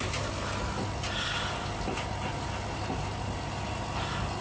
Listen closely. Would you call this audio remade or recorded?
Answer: recorded